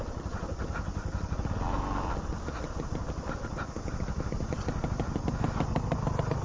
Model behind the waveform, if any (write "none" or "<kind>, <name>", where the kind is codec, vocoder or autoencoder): none